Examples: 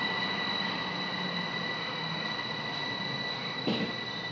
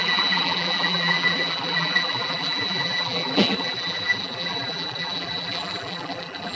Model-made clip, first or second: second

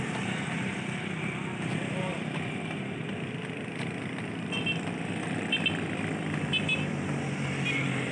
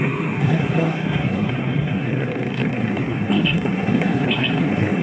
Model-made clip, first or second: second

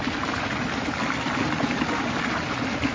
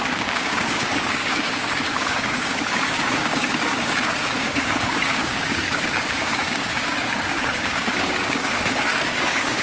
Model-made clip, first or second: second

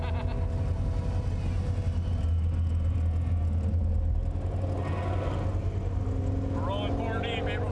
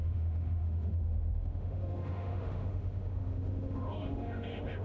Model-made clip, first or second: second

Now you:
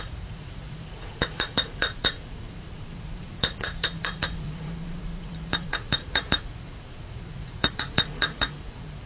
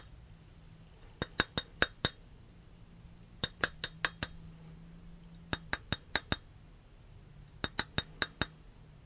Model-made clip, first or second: first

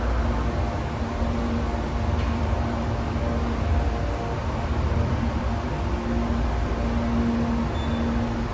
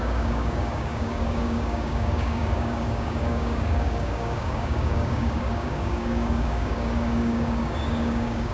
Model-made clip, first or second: second